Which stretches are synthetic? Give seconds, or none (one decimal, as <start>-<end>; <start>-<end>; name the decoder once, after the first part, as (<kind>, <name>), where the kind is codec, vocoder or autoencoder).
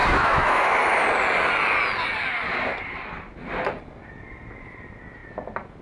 0.0-0.7 (autoencoder, DAC-VAE)